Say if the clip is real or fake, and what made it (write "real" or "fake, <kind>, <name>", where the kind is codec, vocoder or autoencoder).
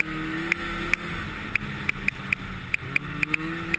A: real